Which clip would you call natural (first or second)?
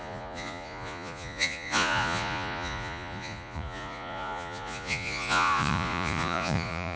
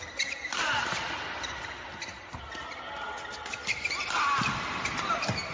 second